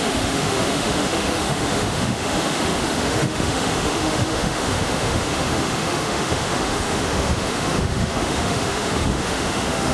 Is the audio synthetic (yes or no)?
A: yes